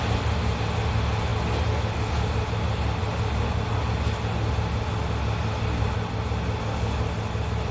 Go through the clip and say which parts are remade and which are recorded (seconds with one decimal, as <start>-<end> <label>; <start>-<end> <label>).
0.0-7.7 recorded